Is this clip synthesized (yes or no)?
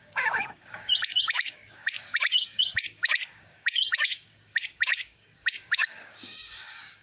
yes